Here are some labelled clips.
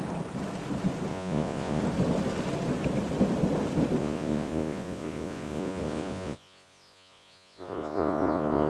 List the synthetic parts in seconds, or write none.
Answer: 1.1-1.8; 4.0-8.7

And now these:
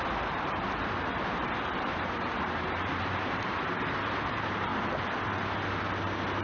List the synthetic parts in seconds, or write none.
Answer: 0.0-4.7; 5.8-6.4

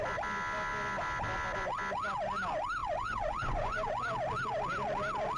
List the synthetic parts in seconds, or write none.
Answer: 2.8-3.9

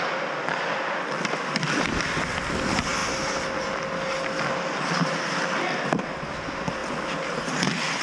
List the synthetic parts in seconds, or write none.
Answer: none